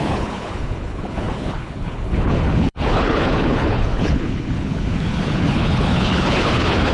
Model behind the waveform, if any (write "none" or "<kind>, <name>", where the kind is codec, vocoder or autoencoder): codec, HILCodec